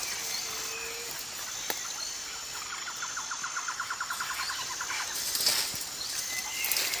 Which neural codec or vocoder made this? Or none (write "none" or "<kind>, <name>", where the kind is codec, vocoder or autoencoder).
none